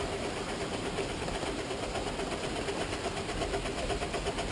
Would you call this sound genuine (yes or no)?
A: yes